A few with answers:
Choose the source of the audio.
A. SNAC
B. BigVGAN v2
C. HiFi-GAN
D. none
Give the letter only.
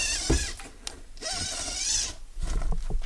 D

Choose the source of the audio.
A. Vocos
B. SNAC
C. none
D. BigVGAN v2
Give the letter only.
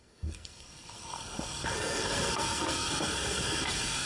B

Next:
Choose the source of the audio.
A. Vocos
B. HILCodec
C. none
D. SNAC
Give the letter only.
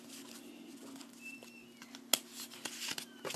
C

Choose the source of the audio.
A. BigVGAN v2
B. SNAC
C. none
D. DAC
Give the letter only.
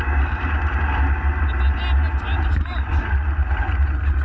C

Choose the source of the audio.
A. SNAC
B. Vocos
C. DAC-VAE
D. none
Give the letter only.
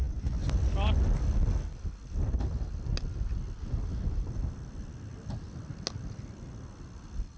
D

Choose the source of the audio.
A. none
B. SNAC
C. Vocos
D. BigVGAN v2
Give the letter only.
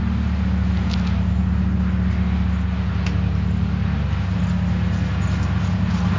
A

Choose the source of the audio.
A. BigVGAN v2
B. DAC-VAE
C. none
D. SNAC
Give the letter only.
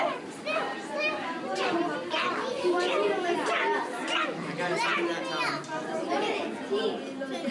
C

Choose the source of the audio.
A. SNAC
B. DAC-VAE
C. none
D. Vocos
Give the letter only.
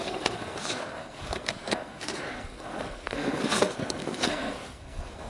A